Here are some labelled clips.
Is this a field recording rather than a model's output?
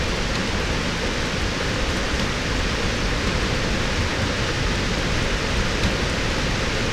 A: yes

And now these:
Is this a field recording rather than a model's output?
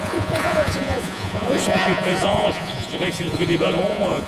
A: no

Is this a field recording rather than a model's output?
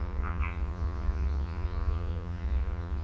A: no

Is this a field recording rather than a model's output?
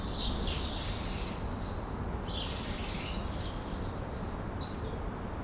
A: yes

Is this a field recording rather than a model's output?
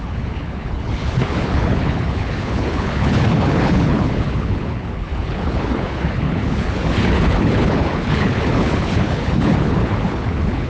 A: no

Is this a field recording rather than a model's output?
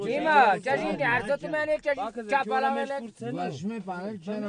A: yes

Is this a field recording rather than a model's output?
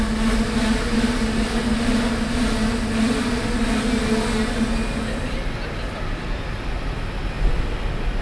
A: yes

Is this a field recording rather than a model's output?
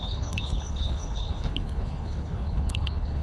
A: no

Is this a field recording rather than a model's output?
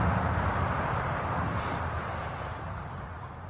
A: yes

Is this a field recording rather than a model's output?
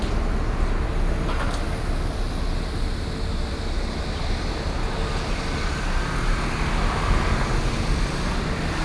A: yes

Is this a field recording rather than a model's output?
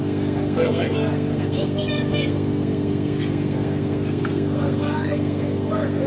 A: no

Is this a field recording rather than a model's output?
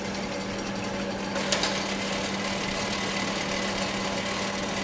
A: yes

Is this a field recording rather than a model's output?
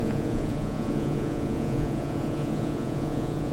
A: no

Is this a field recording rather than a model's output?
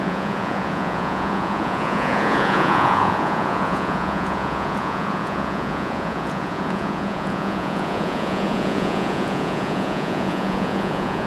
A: no